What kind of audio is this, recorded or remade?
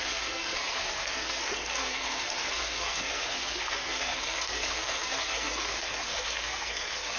remade